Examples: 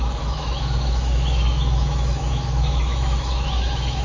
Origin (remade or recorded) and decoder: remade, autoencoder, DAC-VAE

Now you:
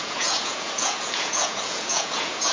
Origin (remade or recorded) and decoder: remade, vocoder, Vocos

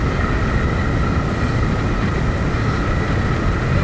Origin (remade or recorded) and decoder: recorded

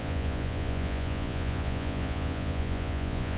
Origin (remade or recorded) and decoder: remade, vocoder, Vocos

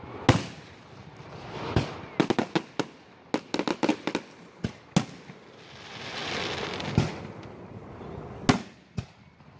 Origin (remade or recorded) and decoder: recorded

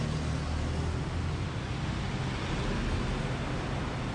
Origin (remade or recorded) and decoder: recorded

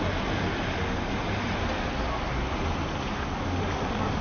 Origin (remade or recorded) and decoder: recorded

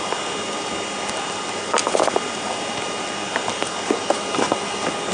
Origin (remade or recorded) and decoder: recorded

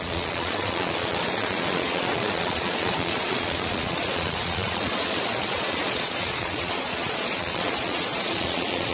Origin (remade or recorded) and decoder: remade, vocoder, Vocos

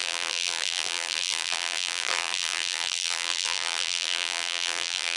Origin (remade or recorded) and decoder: remade, vocoder, BigVGAN v2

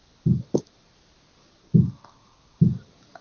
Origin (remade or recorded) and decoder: recorded